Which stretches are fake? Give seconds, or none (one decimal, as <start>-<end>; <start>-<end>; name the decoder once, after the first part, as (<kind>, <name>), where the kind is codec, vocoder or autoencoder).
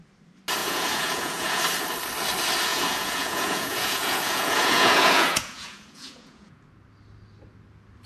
0.6-1.6 (vocoder, Vocos); 2.7-6.6